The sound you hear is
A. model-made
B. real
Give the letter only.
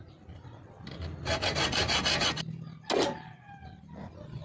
B